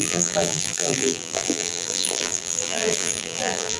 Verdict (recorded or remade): remade